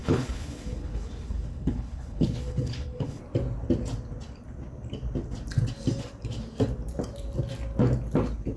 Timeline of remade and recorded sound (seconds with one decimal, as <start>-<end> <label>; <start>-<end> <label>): 0.0-3.2 remade; 3.2-8.6 recorded